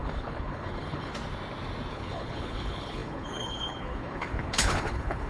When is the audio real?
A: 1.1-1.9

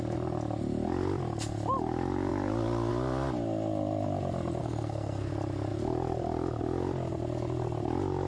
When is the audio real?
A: 0.0-4.6; 5.3-8.3